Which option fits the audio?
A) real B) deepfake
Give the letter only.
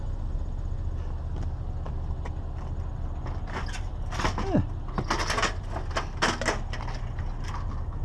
A